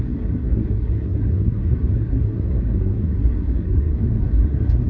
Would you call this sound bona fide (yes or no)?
no